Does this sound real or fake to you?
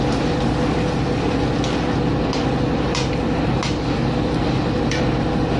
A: fake